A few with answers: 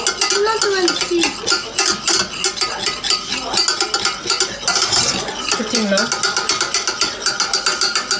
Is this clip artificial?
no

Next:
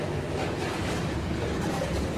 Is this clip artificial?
yes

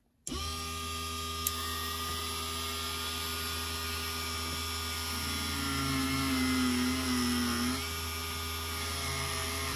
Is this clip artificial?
no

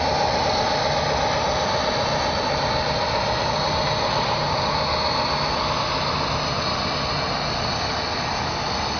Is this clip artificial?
no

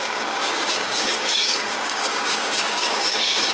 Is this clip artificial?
yes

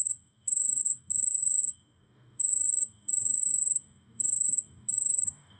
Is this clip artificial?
yes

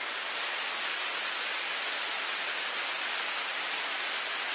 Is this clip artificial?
no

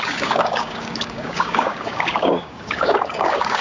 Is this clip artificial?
yes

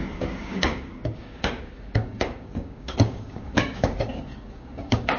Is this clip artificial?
yes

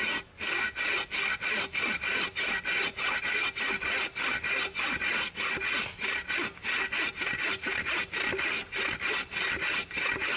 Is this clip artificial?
no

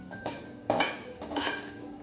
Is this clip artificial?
yes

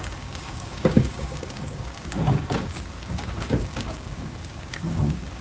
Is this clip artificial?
yes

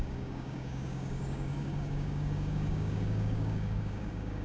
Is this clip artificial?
yes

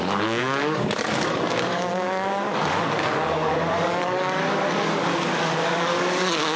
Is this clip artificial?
yes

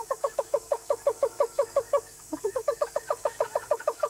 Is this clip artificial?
yes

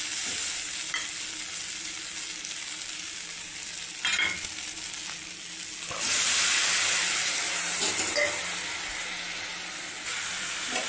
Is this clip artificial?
no